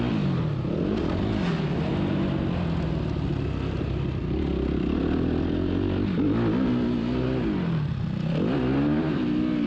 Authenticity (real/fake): real